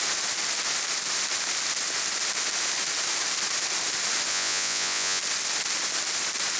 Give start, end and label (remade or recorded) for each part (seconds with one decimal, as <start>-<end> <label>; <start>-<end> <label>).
0.0-4.3 recorded; 4.3-5.2 remade; 5.2-6.6 recorded